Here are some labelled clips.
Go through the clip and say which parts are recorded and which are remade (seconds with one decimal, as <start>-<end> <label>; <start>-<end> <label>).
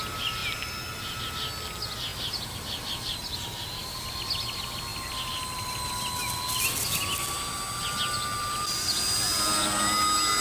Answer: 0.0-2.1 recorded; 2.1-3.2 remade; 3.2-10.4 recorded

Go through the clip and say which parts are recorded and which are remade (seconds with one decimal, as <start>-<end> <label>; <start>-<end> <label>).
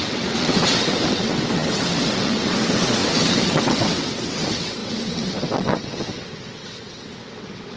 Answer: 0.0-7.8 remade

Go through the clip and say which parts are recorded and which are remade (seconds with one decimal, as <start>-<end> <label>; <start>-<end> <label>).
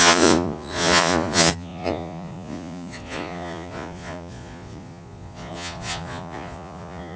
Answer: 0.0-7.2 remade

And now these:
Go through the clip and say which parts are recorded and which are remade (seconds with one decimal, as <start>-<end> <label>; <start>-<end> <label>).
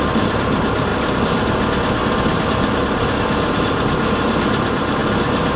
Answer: 0.0-5.6 recorded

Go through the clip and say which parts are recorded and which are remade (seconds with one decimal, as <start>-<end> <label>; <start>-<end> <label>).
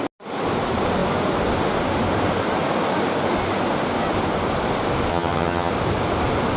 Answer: 0.0-5.1 recorded; 5.1-5.7 remade; 5.7-6.6 recorded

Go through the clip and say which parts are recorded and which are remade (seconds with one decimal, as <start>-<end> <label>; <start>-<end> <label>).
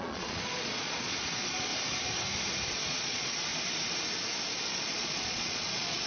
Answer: 0.0-1.7 remade; 1.7-2.7 recorded; 2.7-3.5 remade; 3.5-4.7 recorded; 4.7-6.1 remade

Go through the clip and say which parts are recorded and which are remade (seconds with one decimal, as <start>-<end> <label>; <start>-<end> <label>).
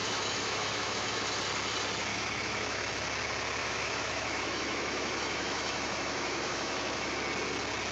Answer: 0.0-1.2 remade; 1.2-2.1 recorded; 2.1-3.0 remade; 3.0-3.6 recorded; 3.6-7.1 remade; 7.1-7.9 recorded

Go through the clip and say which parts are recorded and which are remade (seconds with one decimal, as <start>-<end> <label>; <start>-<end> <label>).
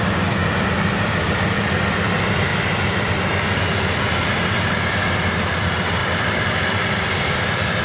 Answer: 0.0-0.4 recorded; 0.4-1.3 remade; 1.3-2.5 recorded; 2.5-3.3 remade; 3.3-6.0 recorded; 6.0-7.8 remade